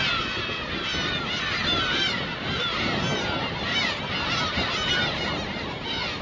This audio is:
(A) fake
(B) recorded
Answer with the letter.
B